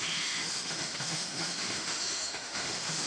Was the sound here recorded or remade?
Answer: remade